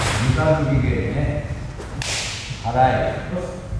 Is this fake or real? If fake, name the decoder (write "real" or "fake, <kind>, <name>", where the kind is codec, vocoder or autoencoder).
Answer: real